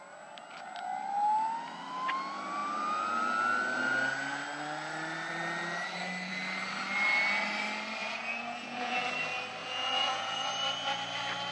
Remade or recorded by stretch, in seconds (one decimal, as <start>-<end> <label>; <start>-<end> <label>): 0.0-8.0 recorded; 8.0-9.1 remade; 9.1-9.6 recorded; 9.6-10.5 remade; 10.5-11.5 recorded